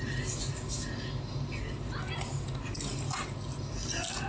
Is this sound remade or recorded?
recorded